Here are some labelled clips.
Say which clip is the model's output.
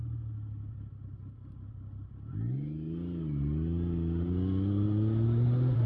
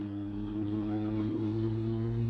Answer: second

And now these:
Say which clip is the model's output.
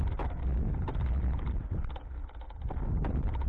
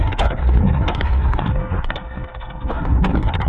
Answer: second